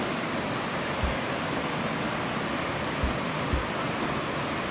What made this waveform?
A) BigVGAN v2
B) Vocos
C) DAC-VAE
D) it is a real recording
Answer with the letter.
D